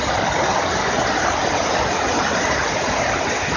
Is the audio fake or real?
real